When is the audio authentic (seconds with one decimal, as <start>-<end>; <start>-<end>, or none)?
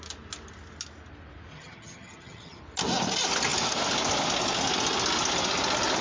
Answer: 0.0-1.5; 2.6-6.0